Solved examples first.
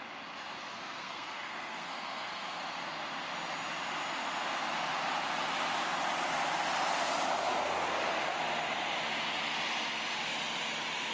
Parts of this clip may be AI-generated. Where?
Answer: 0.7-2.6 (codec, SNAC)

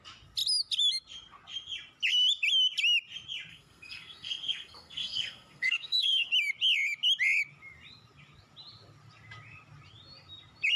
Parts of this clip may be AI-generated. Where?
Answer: 3.5-6.3 (codec, SNAC)

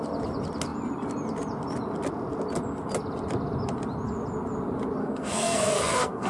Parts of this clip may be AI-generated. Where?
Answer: 5.0-6.3 (codec, SNAC)

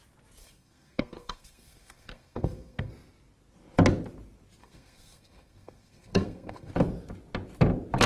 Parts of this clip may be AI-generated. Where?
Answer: 0.4-2.9 (codec, SNAC); 4.6-6.7